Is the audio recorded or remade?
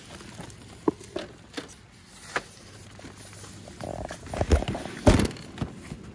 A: recorded